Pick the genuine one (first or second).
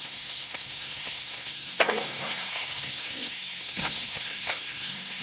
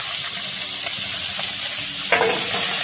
second